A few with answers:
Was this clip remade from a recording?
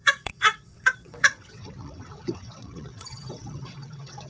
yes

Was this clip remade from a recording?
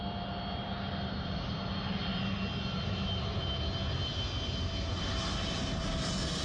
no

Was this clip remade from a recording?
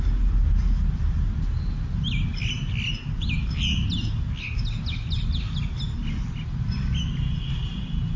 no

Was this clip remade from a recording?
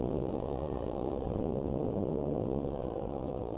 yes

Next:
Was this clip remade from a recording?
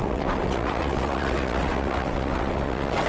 yes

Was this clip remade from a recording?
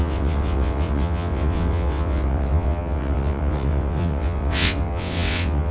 yes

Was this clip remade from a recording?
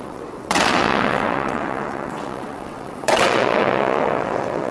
yes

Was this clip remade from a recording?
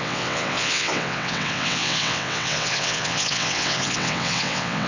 yes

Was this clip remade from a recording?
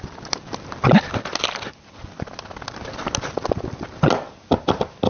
no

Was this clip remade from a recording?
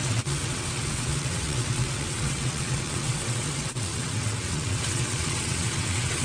yes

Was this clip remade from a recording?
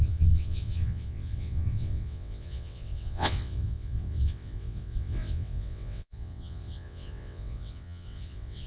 yes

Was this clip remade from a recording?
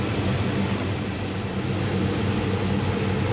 no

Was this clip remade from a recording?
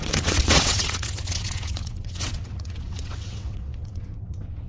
yes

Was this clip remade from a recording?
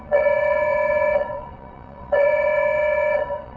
yes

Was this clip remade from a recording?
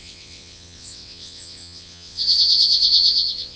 yes